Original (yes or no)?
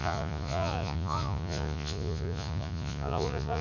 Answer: no